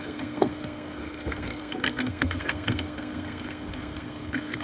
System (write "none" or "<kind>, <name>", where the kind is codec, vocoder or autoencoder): codec, SNAC